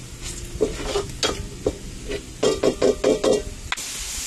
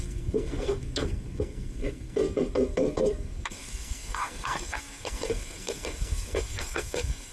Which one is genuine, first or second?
first